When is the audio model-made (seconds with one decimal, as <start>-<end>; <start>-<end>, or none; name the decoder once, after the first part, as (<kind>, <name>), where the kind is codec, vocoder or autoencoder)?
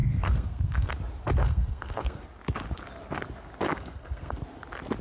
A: 0.0-0.9 (codec, SNAC); 1.4-2.2; 3.7-4.4